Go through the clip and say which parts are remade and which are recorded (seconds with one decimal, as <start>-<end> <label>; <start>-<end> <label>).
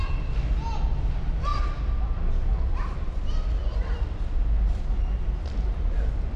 0.0-6.4 recorded